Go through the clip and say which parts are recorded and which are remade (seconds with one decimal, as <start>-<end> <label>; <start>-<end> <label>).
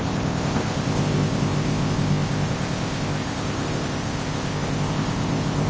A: 0.0-5.7 remade